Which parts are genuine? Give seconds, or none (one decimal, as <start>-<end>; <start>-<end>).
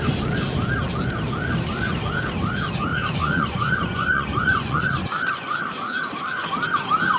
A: 0.0-2.9; 5.6-7.2